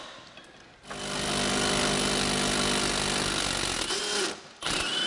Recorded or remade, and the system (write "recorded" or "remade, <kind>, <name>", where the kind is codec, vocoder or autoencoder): recorded